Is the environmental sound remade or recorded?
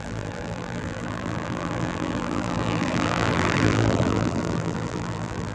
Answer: remade